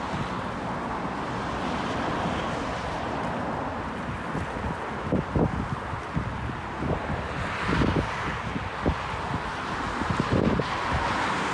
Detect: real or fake real